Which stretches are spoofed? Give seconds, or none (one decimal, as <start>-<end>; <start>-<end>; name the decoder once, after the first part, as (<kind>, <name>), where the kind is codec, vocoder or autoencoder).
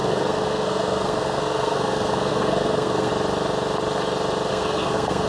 0.0-3.1 (codec, SNAC); 4.5-5.3